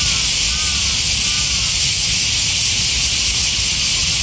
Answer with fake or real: real